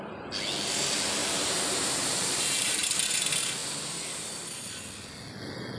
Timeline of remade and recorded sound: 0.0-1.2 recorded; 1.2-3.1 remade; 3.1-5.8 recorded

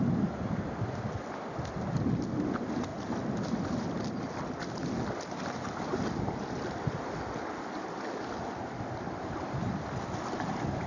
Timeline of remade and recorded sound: 0.0-10.9 recorded

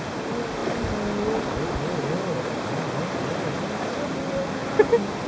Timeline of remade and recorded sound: 0.0-3.3 recorded; 3.3-4.1 remade; 4.1-5.3 recorded

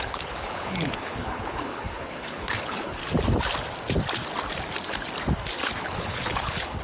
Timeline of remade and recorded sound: 0.0-3.0 remade; 3.0-5.8 recorded; 5.8-6.8 remade

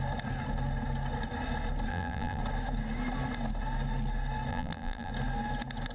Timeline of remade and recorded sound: 0.0-1.9 recorded; 1.9-2.4 remade; 2.4-4.5 recorded; 4.5-5.1 remade; 5.1-5.9 recorded

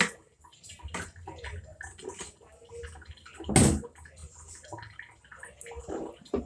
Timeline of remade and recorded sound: 0.0-6.5 recorded